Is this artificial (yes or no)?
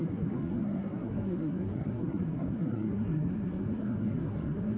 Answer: yes